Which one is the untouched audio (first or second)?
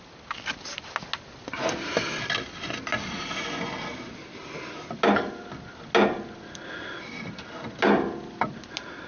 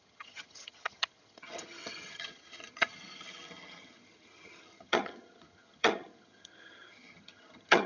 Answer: first